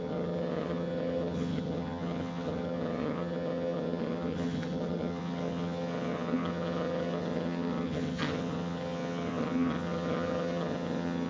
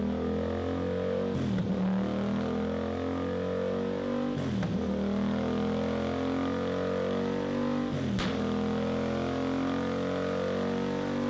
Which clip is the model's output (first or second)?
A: first